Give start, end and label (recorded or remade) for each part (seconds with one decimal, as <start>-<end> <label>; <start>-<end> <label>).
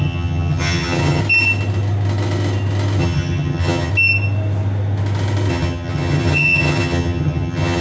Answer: 0.0-1.2 remade; 1.2-3.0 recorded; 3.0-3.9 remade; 3.9-5.5 recorded; 5.5-7.8 remade